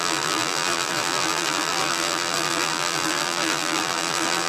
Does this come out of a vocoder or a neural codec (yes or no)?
yes